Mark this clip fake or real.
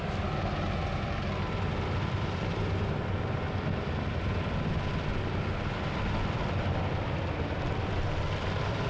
real